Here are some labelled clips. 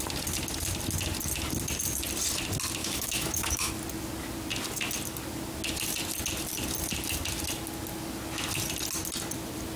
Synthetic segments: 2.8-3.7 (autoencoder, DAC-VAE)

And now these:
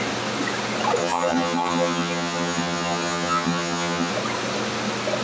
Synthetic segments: 1.0-4.1 (vocoder, HiFi-GAN)